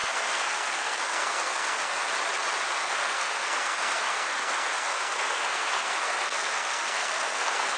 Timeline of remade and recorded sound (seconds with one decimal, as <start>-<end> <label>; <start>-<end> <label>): 0.0-2.0 remade; 2.0-2.8 recorded; 2.8-7.8 remade